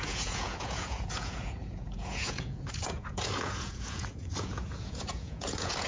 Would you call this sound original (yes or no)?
no